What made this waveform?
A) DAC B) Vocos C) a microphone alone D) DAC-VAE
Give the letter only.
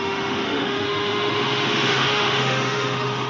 D